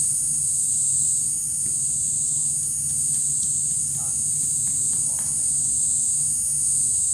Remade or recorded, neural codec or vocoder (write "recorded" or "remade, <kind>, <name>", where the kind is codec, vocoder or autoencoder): recorded